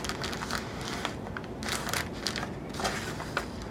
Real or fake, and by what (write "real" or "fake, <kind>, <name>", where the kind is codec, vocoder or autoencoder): real